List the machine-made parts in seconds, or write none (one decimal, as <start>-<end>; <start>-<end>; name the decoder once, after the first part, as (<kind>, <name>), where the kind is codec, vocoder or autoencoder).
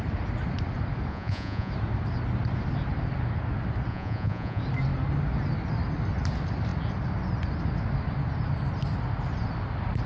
1.1-1.7 (vocoder, Vocos); 3.9-4.6